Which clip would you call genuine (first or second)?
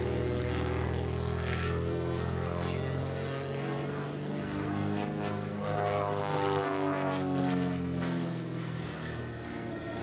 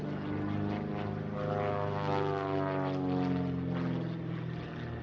second